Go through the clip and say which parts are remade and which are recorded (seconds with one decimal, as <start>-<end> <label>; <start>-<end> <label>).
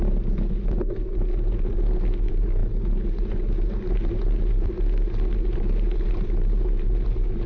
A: 0.0-7.5 recorded